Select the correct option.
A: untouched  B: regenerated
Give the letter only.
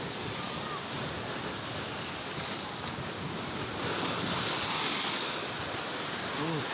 A